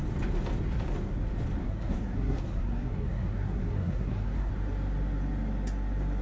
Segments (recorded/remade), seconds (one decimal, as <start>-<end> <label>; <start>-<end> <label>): 0.0-1.6 recorded; 1.6-4.5 remade; 4.5-6.2 recorded